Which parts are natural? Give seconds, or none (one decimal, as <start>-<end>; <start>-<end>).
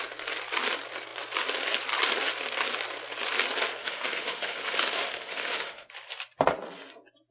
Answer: 0.0-3.8; 5.9-7.3